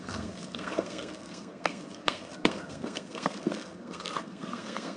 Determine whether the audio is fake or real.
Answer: fake